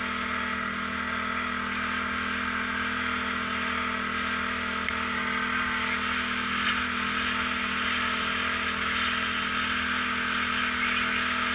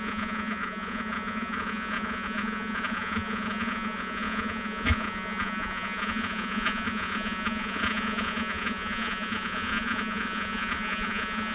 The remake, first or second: second